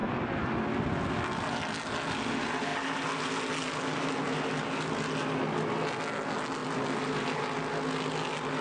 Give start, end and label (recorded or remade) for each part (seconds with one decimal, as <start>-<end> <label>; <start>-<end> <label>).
0.0-8.6 recorded